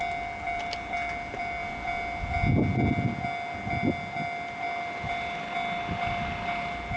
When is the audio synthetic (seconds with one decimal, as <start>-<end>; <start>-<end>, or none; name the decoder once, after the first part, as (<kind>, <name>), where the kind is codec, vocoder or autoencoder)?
none